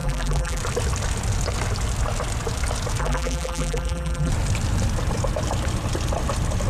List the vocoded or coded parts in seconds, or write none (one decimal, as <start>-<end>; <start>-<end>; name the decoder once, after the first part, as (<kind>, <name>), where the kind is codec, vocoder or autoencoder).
0.0-0.6 (vocoder, BigVGAN v2); 3.0-4.3

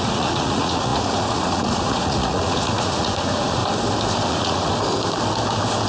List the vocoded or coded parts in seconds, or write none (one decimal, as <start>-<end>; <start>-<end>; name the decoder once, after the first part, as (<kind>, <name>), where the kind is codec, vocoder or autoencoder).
0.0-3.6 (vocoder, Vocos); 4.3-4.7

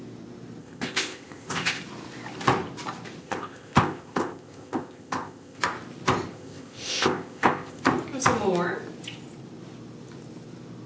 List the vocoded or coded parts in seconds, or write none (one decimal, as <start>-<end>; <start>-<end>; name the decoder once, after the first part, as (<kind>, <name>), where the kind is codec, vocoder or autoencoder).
0.6-1.8 (codec, ZipCodec); 3.2-5.6; 6.3-7.8